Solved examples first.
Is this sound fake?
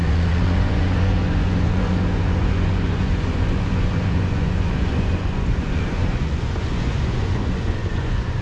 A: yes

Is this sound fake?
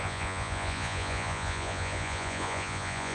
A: yes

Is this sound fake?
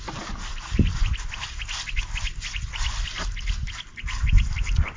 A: no